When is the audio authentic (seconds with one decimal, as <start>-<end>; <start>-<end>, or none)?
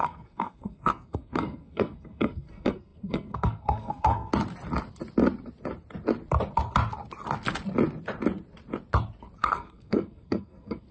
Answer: 4.3-9.4